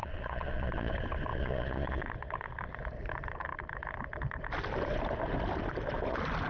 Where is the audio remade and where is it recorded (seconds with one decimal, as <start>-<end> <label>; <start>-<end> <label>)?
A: 0.0-0.9 remade; 0.9-1.3 recorded; 1.3-2.1 remade; 2.1-6.5 recorded